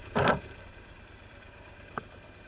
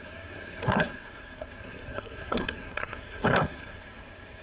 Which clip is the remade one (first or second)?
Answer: second